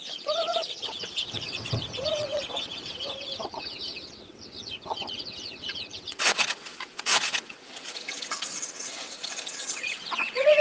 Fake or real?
fake